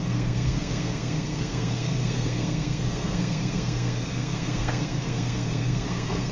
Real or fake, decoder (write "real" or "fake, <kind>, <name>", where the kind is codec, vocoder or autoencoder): fake, codec, SNAC